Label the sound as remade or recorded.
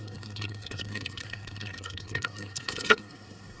remade